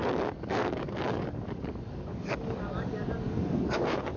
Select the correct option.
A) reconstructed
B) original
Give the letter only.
A